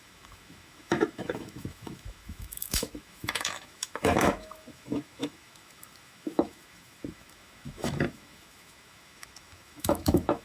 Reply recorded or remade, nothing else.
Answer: remade